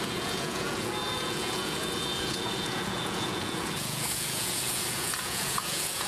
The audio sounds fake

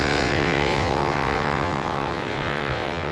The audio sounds fake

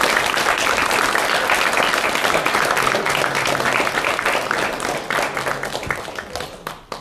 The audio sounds real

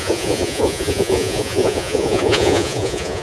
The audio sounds fake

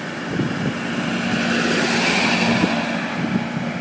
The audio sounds real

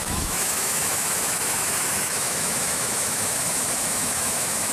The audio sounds fake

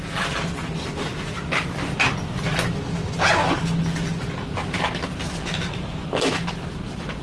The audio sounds real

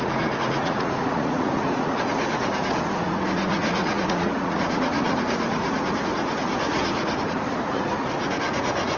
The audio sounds fake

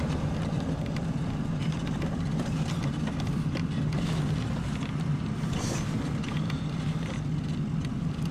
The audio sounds real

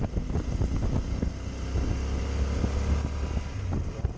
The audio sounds real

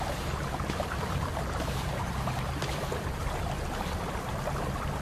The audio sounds real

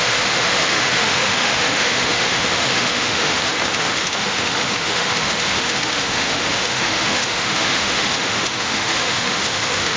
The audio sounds fake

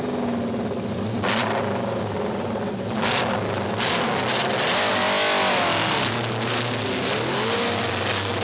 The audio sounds real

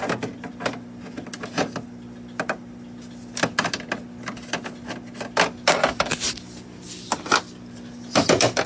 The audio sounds real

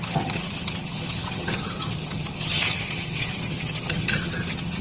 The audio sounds fake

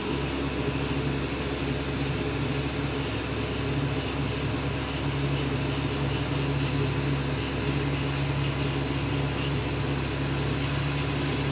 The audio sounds real